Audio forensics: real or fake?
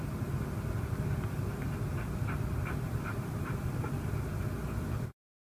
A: real